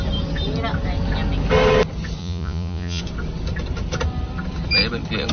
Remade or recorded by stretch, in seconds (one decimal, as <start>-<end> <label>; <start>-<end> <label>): 0.0-2.2 recorded; 2.2-3.0 remade; 3.0-5.3 recorded